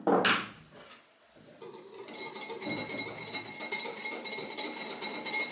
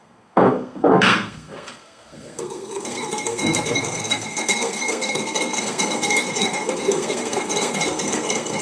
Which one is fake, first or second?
second